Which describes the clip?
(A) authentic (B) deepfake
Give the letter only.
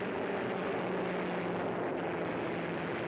A